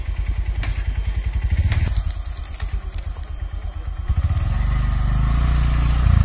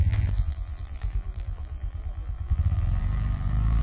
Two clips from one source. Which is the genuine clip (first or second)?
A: first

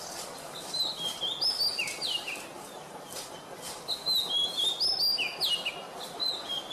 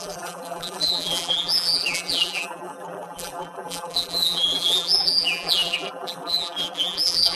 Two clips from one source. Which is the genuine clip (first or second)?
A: first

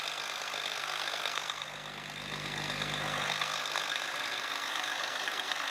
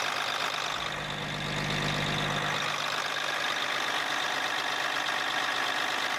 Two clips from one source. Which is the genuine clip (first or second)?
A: second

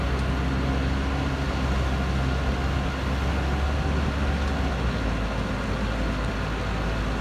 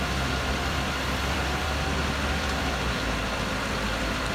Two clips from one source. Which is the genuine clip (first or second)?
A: first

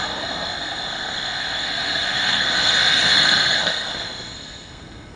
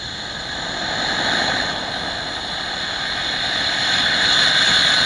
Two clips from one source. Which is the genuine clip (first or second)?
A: second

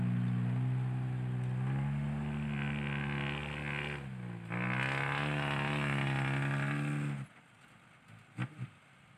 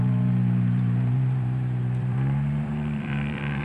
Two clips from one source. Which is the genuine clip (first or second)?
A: first